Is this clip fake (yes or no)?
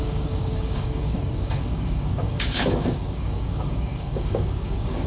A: yes